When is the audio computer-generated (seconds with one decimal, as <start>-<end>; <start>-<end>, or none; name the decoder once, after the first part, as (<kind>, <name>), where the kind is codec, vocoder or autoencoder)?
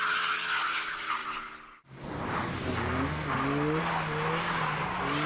none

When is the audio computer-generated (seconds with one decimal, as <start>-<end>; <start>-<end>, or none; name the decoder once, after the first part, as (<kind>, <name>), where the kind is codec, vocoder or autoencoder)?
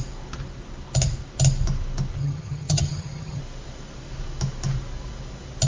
2.2-3.4 (vocoder, HiFi-GAN)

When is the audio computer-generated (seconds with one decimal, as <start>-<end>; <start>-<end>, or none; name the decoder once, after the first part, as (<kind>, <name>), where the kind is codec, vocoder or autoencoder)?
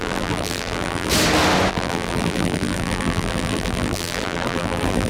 0.0-1.1 (vocoder, BigVGAN v2); 1.7-5.1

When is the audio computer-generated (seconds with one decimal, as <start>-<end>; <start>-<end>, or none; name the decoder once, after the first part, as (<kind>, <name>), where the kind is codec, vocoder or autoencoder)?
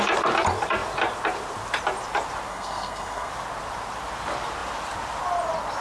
2.5-3.3 (codec, SNAC)